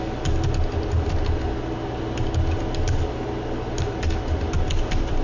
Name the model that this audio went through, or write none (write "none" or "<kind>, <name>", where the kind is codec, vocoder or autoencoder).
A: none